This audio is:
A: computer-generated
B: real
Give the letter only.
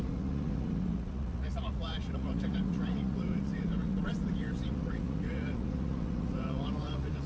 A